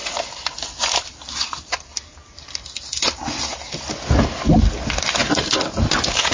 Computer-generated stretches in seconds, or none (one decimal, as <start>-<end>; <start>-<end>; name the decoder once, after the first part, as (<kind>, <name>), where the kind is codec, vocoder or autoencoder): none